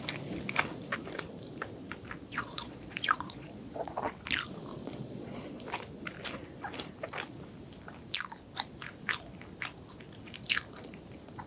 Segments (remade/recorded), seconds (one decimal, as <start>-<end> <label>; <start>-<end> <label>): 0.0-2.3 recorded; 2.3-4.1 remade; 4.1-4.7 recorded; 4.7-5.6 remade; 5.6-11.5 recorded